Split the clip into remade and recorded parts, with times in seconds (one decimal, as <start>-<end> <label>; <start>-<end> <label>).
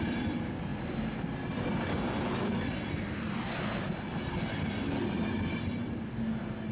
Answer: 0.0-6.7 recorded